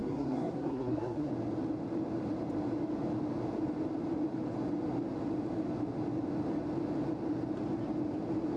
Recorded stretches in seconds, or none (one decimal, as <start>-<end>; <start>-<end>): 1.3-8.6